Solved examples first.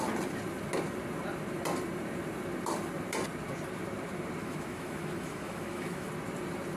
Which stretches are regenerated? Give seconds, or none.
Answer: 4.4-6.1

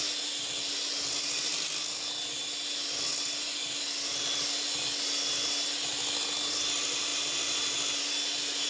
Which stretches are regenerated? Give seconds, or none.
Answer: none

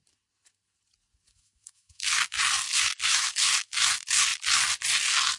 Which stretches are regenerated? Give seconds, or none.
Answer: 1.3-2.4; 3.1-3.9

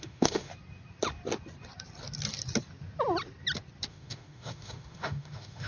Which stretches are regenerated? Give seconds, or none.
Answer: 0.0-0.5; 3.9-5.7

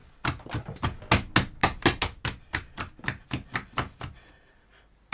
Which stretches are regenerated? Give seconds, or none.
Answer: none

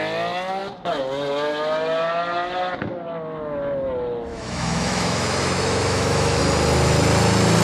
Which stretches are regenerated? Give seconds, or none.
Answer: 4.3-6.4

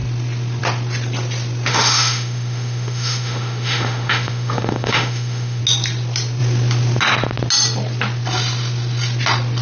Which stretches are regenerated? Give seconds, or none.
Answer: 1.7-5.6

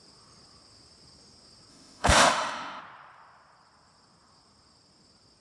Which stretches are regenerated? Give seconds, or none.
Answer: 1.7-2.8